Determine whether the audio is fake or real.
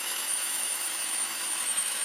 fake